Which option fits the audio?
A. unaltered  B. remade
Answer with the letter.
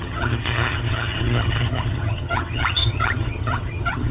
B